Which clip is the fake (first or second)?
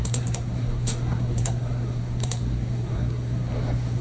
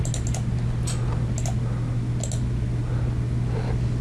first